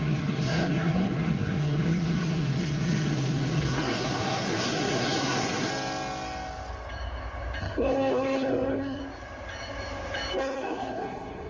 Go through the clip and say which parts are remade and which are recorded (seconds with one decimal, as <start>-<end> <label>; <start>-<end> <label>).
0.0-5.7 remade; 5.7-7.6 recorded; 7.6-9.0 remade; 9.0-10.4 recorded; 10.4-11.5 remade